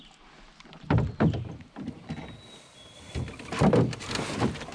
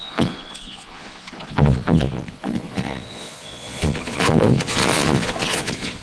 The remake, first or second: second